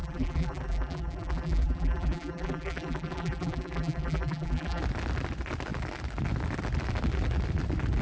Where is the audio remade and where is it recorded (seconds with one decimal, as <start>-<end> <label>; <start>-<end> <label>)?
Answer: 0.0-4.8 remade; 4.8-8.0 recorded